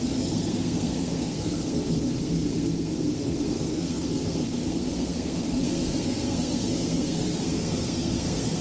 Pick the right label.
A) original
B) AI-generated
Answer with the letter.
B